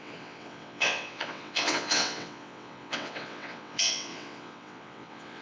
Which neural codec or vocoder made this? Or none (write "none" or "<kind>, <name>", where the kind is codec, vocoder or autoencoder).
vocoder, WaveNeXt